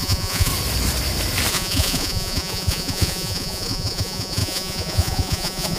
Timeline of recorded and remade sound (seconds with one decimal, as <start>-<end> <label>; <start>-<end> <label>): 0.0-0.5 remade; 0.5-1.5 recorded; 1.5-5.8 remade